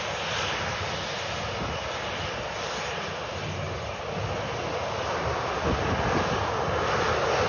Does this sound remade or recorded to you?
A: recorded